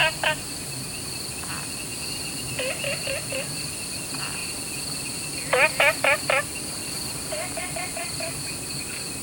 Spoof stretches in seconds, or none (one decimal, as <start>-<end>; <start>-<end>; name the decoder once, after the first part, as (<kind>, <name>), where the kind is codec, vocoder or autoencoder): none